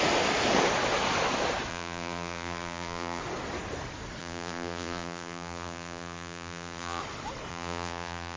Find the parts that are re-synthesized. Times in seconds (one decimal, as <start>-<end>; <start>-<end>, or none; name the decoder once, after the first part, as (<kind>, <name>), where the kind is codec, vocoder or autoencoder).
1.7-3.2 (vocoder, BigVGAN v2); 4.2-7.0; 7.5-8.4